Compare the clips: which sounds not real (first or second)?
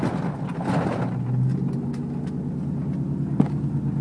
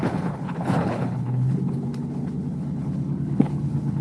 second